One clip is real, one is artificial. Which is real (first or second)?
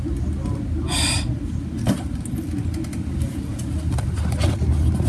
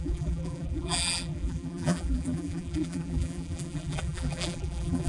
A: first